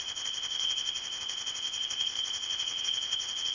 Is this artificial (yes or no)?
yes